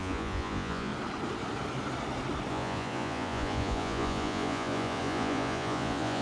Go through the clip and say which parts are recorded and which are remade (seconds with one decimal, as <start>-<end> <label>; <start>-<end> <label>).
0.0-0.9 remade; 0.9-2.5 recorded; 2.5-6.2 remade